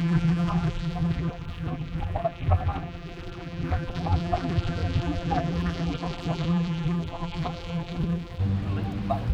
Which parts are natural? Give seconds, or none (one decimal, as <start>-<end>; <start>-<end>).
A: 8.4-9.3

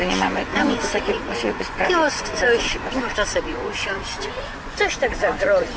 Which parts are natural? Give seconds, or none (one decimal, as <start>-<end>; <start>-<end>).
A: none

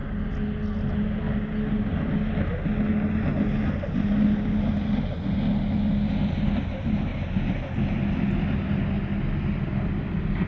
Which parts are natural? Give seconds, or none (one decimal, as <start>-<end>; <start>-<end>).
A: 0.0-10.5

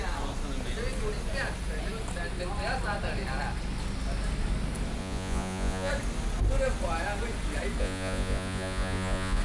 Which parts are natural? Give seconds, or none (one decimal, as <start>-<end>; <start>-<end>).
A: 0.0-5.0; 5.9-7.8

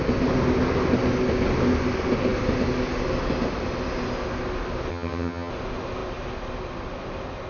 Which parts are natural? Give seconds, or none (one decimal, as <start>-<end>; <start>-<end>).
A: 0.0-4.9; 5.5-7.5

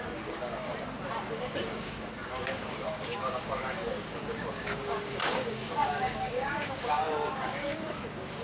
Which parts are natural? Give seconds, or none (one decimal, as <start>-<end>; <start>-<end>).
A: 0.7-1.4